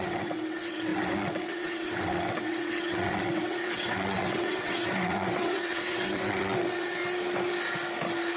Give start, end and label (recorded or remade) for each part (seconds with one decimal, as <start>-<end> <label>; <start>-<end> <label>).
0.0-7.0 remade; 7.0-8.4 recorded